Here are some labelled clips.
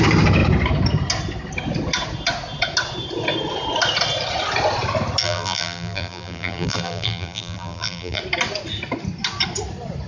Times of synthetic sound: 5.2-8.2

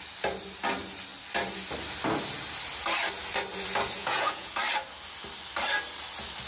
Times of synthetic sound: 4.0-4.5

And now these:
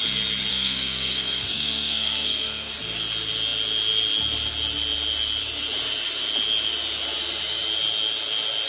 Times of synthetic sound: 0.5-2.7

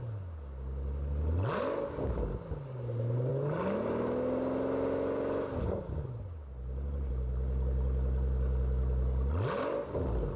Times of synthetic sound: none

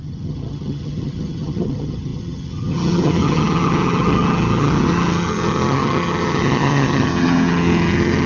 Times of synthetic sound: 0.0-8.3

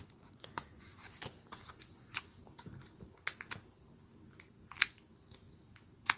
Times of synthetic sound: 0.0-0.9; 1.7-2.3

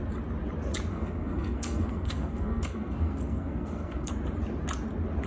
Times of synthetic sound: 0.9-4.1

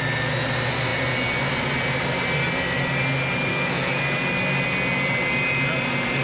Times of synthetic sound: 3.5-4.0